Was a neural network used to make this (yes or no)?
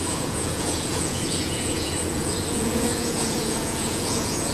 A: yes